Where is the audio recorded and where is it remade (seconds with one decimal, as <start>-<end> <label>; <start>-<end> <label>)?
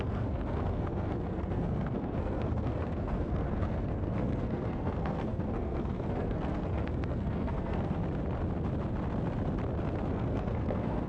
0.0-8.0 remade; 8.0-10.1 recorded; 10.1-11.1 remade